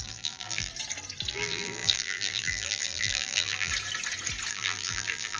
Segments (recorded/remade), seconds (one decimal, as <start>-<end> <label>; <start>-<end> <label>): 0.0-0.7 remade; 0.7-1.3 recorded; 1.3-3.7 remade; 3.7-4.5 recorded; 4.5-5.4 remade